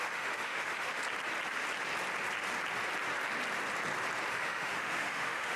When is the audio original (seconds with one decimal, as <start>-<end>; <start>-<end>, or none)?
1.0-4.3